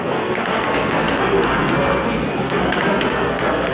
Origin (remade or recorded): remade